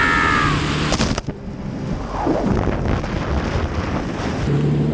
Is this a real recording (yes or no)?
yes